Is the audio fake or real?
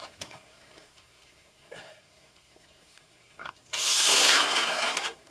fake